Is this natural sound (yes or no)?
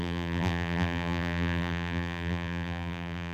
no